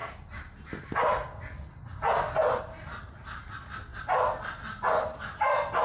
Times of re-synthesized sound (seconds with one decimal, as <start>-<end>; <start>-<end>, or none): none